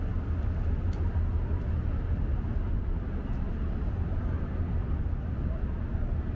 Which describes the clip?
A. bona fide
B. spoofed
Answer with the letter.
A